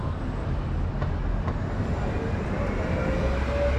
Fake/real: real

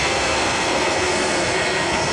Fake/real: fake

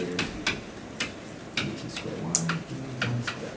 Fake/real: real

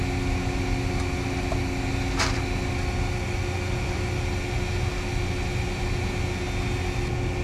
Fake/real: real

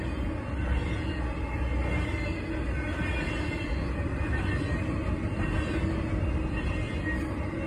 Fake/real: real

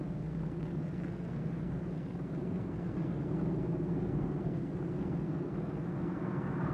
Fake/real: fake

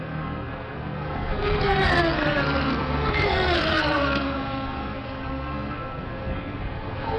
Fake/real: fake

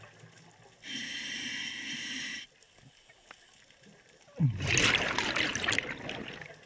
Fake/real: real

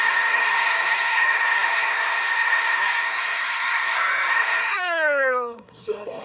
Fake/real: fake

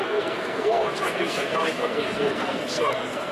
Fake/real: fake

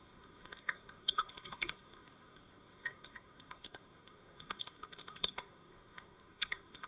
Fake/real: fake